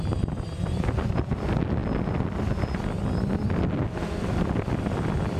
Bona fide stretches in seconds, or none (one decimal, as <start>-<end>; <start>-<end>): 0.0-5.4